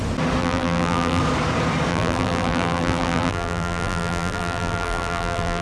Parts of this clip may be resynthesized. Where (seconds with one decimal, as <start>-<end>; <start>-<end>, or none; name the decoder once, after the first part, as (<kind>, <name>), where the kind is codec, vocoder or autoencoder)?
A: 0.4-1.2 (vocoder, BigVGAN v2); 1.9-5.6

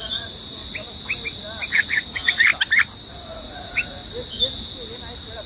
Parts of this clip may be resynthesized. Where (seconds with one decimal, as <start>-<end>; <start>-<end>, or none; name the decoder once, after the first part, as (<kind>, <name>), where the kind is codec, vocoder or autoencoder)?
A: 0.0-0.6 (vocoder, Vocos); 1.7-2.5; 3.1-4.0

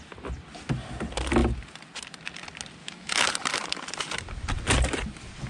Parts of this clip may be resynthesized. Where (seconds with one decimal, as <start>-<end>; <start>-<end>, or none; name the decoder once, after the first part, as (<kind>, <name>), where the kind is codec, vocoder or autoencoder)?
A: 2.8-3.3 (autoencoder, DAC-VAE)

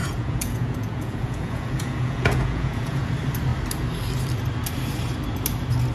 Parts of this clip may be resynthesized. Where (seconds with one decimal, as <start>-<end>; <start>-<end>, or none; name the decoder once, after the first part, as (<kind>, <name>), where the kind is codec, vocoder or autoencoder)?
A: 0.0-3.1 (vocoder, Vocos)

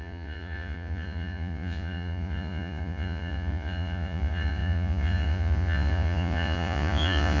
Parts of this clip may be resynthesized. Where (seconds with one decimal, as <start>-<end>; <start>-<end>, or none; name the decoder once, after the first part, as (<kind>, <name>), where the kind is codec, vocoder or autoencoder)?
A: 0.0-7.4 (vocoder, Vocos)

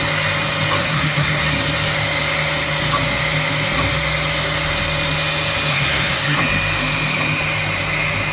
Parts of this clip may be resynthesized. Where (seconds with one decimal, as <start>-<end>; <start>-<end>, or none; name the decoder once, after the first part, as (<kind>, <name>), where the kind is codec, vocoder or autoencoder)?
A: 0.8-1.4 (codec, SNAC); 5.7-6.4

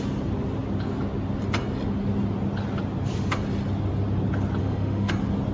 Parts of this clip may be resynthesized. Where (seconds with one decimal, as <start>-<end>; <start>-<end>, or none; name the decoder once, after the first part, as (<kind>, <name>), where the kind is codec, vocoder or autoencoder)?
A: 4.6-5.1 (autoencoder, DAC-VAE)